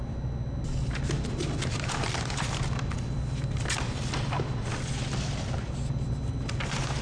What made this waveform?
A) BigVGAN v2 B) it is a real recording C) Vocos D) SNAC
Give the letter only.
B